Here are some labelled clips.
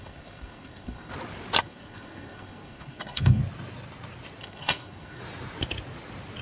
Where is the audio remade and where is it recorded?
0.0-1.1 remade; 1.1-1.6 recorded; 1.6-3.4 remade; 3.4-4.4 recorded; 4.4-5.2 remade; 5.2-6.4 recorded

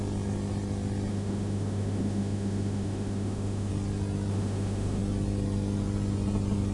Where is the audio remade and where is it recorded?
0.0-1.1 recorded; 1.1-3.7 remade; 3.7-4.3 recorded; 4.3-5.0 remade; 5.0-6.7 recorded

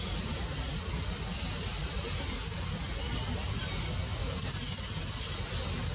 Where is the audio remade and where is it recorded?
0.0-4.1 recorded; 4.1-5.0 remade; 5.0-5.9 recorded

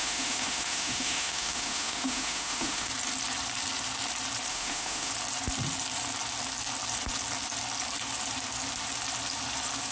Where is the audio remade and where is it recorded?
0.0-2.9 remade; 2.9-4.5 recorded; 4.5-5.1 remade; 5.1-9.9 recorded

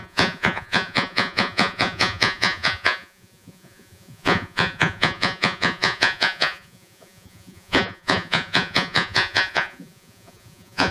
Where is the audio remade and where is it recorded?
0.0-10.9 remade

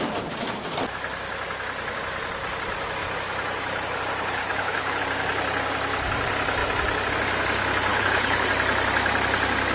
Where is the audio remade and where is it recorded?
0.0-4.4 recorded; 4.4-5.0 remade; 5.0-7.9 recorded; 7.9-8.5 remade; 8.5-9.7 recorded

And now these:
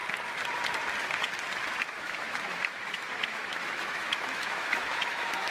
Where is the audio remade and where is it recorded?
0.0-2.0 recorded; 2.0-5.5 remade

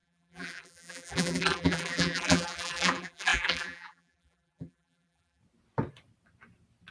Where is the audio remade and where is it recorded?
0.0-5.4 remade; 5.4-6.9 recorded